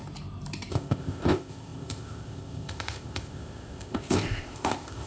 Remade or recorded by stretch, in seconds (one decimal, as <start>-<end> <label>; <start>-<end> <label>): 0.0-0.7 recorded; 0.7-5.1 remade